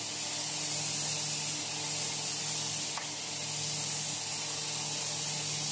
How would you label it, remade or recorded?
recorded